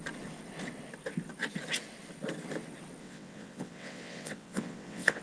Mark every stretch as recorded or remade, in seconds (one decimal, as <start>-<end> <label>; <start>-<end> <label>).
0.0-3.0 recorded; 3.0-5.2 remade